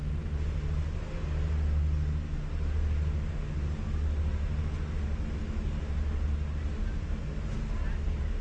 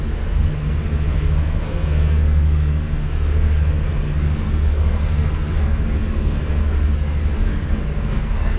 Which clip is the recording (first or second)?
first